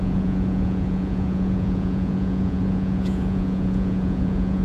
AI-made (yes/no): yes